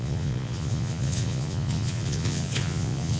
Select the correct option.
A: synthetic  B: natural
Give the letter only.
A